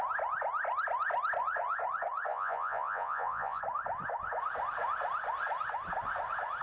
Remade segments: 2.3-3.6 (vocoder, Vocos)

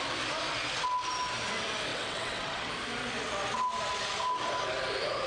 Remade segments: 1.9-2.7 (vocoder, WaveNeXt)

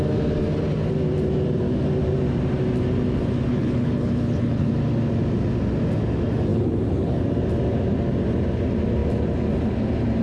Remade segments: 3.5-4.7 (codec, HILCodec); 6.5-7.1

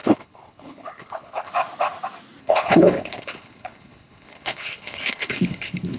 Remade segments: 0.0-1.5 (codec, HILCodec); 2.4-6.0

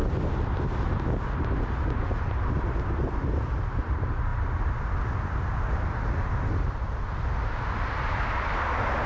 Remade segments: 3.7-4.3 (vocoder, BigVGAN v2)

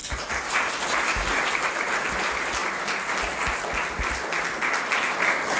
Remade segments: none

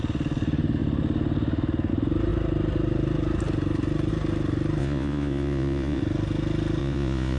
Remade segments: 4.8-6.0 (vocoder, Vocos); 6.8-7.4